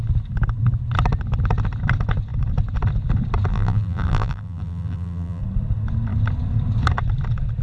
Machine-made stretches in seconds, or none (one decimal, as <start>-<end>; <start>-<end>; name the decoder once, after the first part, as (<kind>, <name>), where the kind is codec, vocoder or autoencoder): 3.5-5.4 (vocoder, BigVGAN v2)